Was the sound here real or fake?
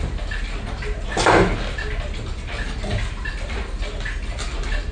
real